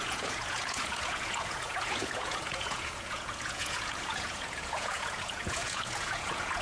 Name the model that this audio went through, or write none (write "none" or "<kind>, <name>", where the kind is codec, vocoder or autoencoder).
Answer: vocoder, Vocos